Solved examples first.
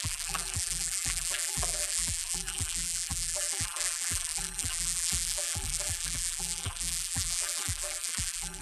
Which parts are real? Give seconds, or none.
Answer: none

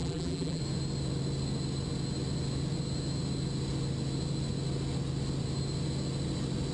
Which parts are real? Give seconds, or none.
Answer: 0.6-6.7

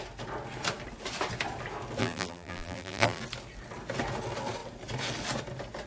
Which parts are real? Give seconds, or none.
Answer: 0.0-2.0; 3.2-5.9

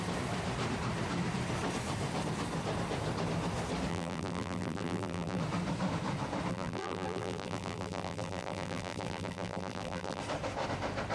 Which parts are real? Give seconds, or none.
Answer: 0.0-3.9; 5.4-6.5; 10.2-11.1

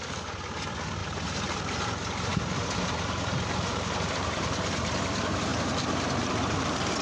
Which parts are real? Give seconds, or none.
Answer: 0.0-1.0; 1.6-2.3; 4.9-7.0

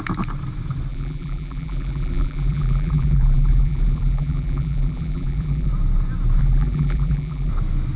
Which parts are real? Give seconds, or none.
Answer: 0.0-0.9; 5.7-6.4; 7.5-8.0